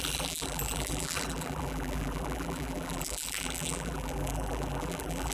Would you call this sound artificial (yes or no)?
yes